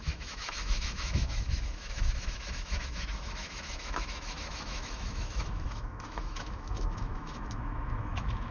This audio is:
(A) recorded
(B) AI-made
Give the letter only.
B